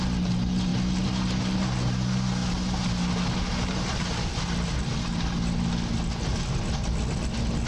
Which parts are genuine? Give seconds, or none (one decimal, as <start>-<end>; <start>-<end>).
0.0-7.7